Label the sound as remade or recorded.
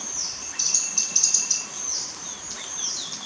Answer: remade